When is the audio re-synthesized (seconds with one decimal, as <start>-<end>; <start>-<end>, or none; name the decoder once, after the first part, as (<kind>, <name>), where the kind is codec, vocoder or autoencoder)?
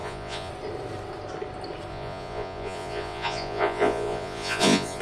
0.0-0.5 (vocoder, Vocos); 1.9-5.0